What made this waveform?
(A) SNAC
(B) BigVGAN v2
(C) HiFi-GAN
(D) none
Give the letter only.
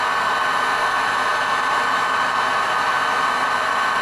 D